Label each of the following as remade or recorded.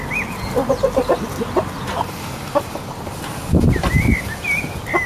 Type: recorded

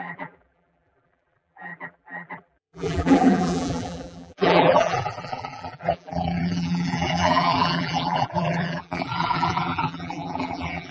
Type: remade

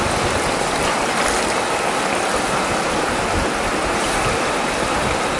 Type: recorded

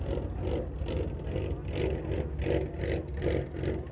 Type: recorded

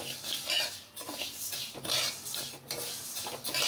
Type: recorded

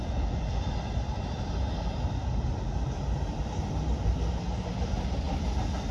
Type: recorded